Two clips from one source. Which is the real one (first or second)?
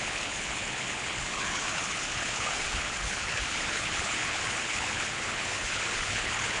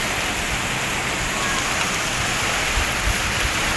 second